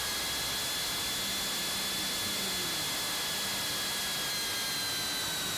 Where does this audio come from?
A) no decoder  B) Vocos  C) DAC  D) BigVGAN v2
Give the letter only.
A